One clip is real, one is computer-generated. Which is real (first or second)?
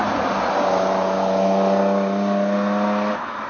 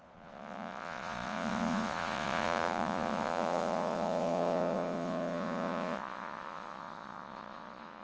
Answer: first